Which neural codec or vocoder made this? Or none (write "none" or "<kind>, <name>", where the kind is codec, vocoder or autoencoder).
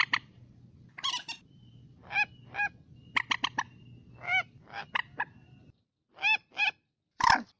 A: none